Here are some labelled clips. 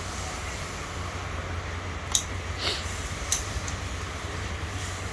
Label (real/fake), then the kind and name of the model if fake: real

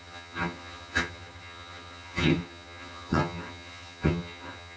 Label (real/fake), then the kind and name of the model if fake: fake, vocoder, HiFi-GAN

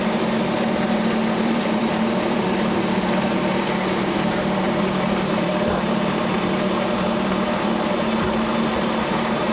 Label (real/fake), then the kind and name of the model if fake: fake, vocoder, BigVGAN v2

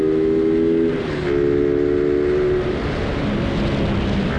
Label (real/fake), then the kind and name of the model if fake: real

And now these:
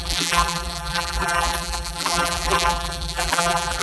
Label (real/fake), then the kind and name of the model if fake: fake, vocoder, BigVGAN v2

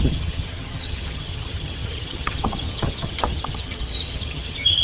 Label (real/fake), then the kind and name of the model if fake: fake, vocoder, HiFi-GAN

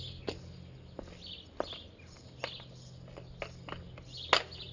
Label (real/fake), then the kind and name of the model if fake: real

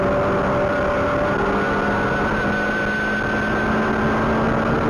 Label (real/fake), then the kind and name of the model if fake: real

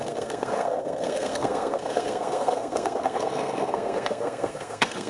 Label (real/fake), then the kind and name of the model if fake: fake, codec, SNAC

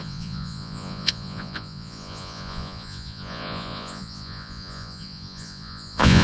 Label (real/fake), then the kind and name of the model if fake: fake, vocoder, Vocos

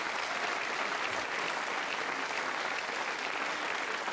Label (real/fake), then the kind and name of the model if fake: real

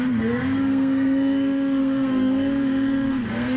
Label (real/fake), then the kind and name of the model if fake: fake, codec, SNAC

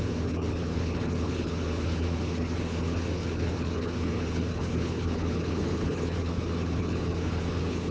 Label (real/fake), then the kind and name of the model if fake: fake, codec, HILCodec